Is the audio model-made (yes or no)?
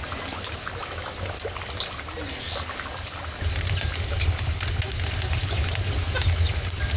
no